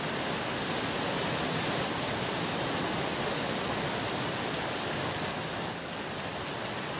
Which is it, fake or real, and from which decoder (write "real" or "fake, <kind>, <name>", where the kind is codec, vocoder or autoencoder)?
real